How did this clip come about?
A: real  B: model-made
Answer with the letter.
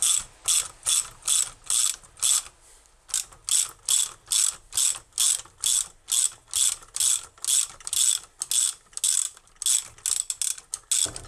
A